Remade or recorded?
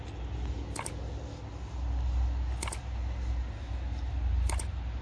recorded